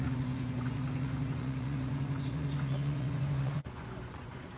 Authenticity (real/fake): fake